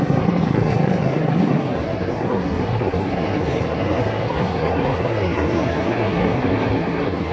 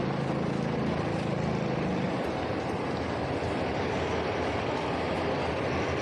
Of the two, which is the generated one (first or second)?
first